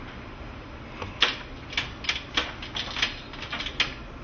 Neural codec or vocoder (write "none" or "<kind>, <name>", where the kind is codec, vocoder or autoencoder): none